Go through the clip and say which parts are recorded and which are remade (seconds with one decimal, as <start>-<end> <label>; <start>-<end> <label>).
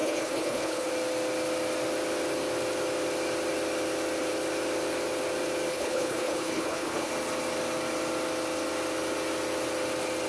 0.0-0.9 remade; 0.9-5.7 recorded; 5.7-7.1 remade; 7.1-10.3 recorded